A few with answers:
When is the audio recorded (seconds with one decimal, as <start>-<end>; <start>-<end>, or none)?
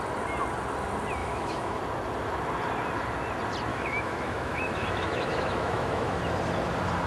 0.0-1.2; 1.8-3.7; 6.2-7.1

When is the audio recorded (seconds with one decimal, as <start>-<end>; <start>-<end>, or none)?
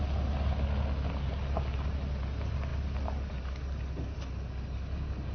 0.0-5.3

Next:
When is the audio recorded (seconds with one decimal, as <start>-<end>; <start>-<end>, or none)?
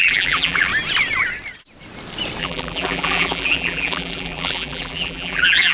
0.7-2.4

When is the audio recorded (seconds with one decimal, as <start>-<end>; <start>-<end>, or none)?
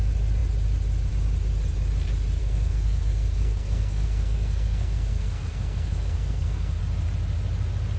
0.0-2.4; 6.8-8.0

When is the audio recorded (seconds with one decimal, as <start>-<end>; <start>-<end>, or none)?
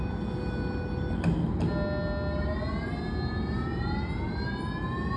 0.0-5.2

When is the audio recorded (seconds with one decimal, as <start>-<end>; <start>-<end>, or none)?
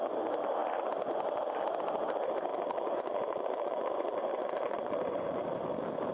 0.0-2.5; 5.4-6.1